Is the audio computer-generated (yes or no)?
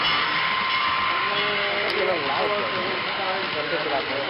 no